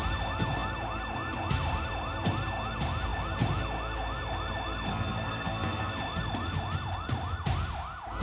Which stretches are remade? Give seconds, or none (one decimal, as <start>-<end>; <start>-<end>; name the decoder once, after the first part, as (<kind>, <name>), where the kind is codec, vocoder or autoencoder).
4.9-5.9 (codec, SNAC)